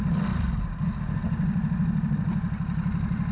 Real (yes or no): yes